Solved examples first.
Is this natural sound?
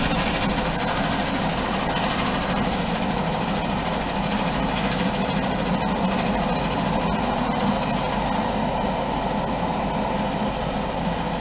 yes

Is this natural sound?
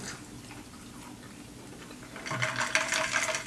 yes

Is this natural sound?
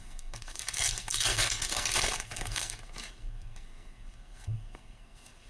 no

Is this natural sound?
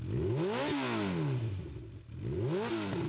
yes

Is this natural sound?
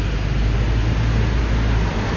yes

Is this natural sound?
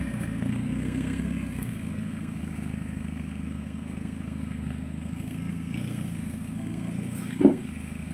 no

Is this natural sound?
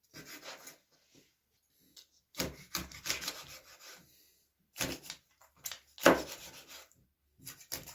yes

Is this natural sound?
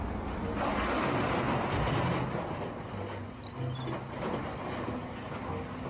yes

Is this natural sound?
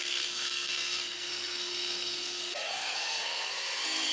no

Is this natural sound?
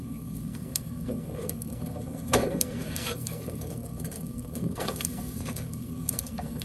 no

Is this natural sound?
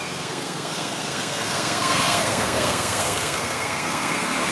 no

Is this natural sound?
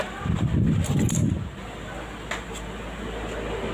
yes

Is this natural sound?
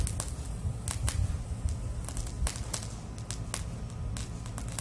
yes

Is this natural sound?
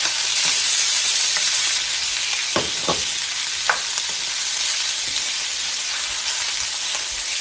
yes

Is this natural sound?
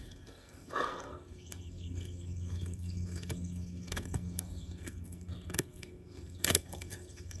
no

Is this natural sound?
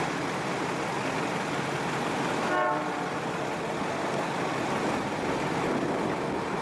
yes